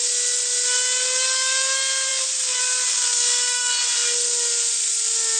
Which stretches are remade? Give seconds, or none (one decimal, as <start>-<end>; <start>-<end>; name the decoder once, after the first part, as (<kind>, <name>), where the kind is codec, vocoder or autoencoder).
3.1-3.7 (codec, DAC)